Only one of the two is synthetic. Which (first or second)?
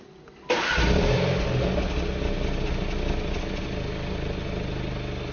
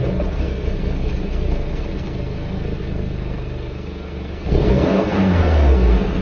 second